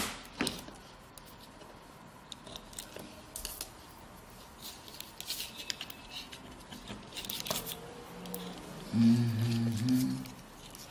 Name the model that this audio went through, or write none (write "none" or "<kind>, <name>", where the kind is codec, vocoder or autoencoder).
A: none